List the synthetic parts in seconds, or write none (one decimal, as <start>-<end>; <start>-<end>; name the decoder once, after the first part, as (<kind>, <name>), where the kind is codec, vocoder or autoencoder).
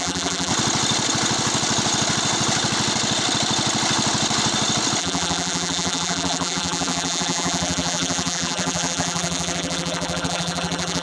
0.0-0.5 (vocoder, BigVGAN v2); 5.0-11.0